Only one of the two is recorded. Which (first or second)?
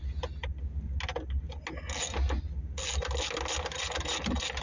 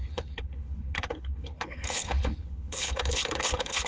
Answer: first